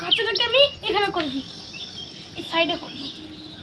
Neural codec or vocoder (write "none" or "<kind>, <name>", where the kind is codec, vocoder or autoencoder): none